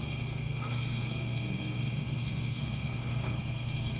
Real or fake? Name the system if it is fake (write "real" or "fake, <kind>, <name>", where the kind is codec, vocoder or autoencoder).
fake, codec, SNAC